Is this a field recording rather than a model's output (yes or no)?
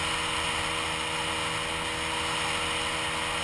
yes